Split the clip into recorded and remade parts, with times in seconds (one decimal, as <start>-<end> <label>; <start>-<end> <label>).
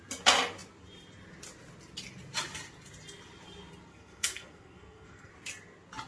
0.0-3.9 recorded; 3.9-5.3 remade; 5.3-6.1 recorded